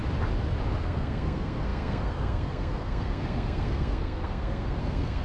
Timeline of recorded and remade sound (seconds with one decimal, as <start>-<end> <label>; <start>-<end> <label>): 0.0-0.8 recorded; 0.8-5.2 remade